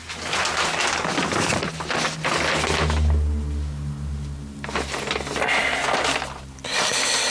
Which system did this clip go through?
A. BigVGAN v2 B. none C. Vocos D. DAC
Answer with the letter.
B